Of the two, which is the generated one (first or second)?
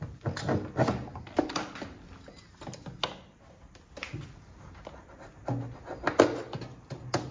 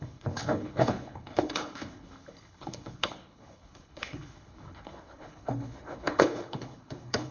second